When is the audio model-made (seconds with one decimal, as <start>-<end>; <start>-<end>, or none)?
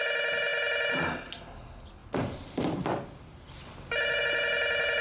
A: none